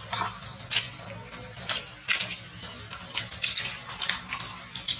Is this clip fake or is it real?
real